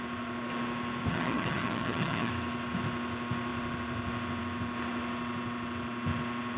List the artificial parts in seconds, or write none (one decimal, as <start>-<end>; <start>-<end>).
1.1-2.3